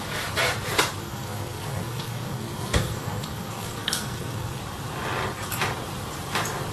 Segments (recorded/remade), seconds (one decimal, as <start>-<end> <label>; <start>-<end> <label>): 0.0-1.0 recorded; 1.0-4.6 remade; 4.6-6.7 recorded